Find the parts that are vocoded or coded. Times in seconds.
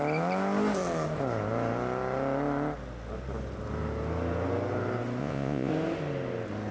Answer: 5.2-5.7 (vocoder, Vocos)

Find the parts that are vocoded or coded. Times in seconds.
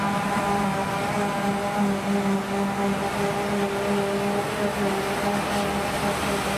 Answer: none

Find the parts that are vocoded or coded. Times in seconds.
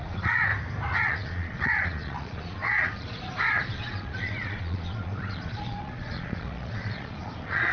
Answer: 0.0-0.5 (vocoder, Vocos); 1.0-7.7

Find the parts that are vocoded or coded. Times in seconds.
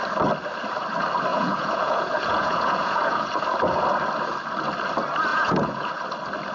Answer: 1.3-3.3 (vocoder, Vocos); 5.3-5.9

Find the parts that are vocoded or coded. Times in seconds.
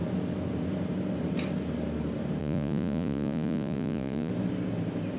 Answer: 2.4-4.3 (vocoder, Vocos)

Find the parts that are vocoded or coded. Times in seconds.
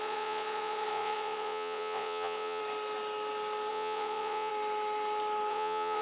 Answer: 0.0-2.6 (vocoder, Vocos); 3.7-4.5; 5.5-6.0